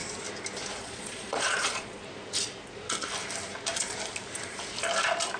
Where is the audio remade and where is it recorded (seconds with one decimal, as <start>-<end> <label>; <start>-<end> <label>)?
0.0-0.8 recorded; 0.8-2.0 remade; 2.0-5.4 recorded